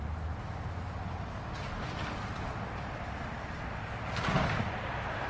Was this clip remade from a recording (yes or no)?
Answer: no